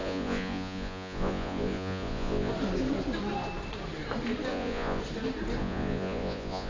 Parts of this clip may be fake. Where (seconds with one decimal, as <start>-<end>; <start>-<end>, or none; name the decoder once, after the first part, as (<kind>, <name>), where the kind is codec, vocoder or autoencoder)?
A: 0.0-2.5 (vocoder, Vocos); 4.5-5.0; 5.6-6.7